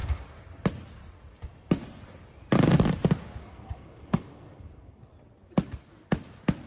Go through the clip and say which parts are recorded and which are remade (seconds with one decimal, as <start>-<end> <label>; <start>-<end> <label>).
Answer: 0.0-3.4 recorded; 3.4-5.1 remade; 5.1-6.7 recorded